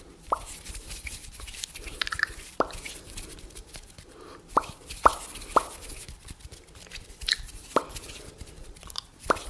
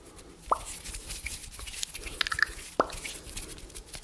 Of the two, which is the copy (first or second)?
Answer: first